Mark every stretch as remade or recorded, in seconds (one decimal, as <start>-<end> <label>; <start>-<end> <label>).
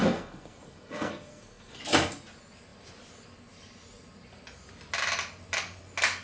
0.0-1.8 remade; 1.8-6.2 recorded